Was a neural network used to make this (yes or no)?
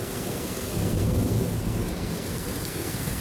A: yes